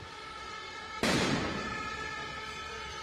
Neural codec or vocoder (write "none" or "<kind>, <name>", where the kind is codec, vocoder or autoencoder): vocoder, BigVGAN v2